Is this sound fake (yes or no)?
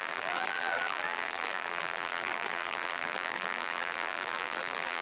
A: yes